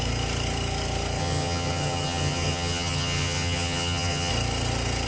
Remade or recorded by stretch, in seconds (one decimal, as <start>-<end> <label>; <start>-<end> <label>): 0.0-1.2 recorded; 1.2-4.3 remade; 4.3-5.1 recorded